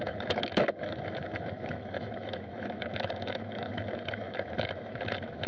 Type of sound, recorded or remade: remade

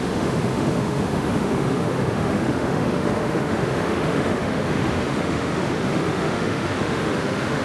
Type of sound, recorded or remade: remade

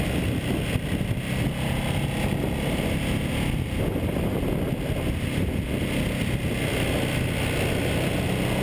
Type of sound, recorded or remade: recorded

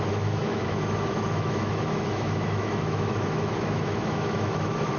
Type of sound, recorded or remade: remade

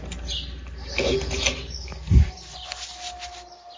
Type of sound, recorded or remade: recorded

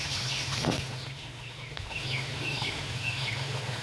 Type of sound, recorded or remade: remade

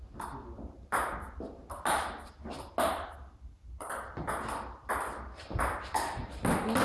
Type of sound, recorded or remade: recorded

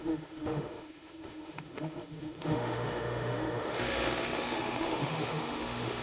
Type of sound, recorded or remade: remade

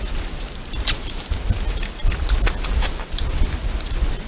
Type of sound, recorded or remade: recorded